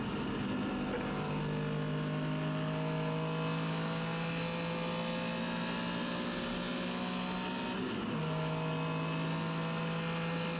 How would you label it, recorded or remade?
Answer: recorded